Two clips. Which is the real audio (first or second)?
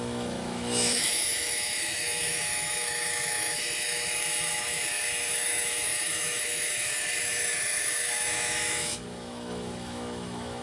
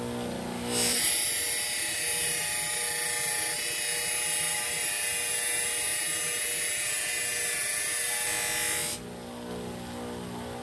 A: second